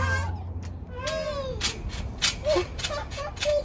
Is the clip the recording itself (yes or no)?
yes